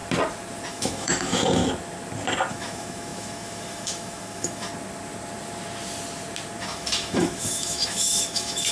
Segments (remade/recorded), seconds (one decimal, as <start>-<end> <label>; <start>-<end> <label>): 0.0-0.7 recorded; 0.7-1.6 remade; 1.6-2.5 recorded; 2.5-4.7 remade; 4.7-6.6 recorded; 6.6-8.7 remade